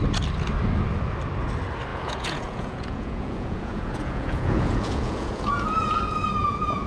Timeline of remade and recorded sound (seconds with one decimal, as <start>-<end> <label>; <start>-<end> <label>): 0.0-1.9 recorded; 1.9-6.0 remade; 6.0-6.4 recorded; 6.4-6.9 remade